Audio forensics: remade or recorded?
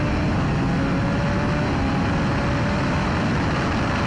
recorded